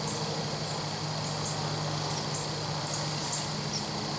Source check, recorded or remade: recorded